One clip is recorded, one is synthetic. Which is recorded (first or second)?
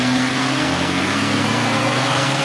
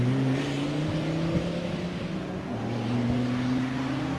second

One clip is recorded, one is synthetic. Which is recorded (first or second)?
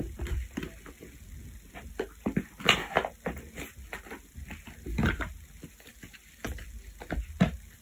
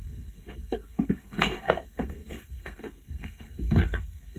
first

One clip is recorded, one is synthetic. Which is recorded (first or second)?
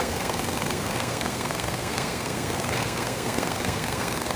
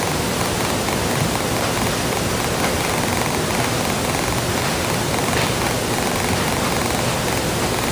second